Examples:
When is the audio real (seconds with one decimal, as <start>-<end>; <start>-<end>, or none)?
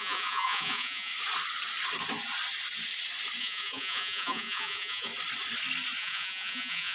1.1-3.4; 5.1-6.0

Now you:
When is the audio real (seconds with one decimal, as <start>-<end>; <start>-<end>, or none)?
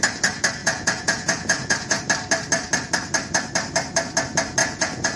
0.0-0.6; 2.0-4.6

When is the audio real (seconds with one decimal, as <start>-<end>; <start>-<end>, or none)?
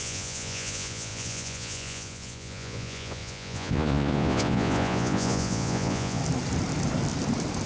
6.2-7.7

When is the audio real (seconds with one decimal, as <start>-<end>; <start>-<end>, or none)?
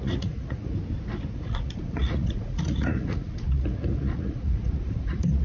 0.7-1.3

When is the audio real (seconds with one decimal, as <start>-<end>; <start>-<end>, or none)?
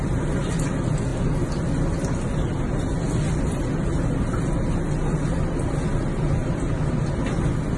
0.0-7.8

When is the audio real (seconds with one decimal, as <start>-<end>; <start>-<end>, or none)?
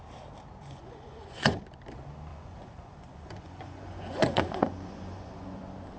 0.0-0.6; 1.6-2.3; 5.6-6.0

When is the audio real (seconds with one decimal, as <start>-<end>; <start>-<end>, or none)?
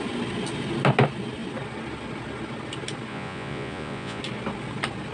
0.0-3.1; 4.2-5.1